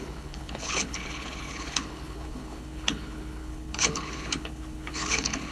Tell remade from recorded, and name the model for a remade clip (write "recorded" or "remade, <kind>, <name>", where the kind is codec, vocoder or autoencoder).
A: remade, codec, HILCodec